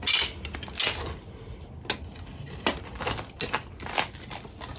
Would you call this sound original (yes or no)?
yes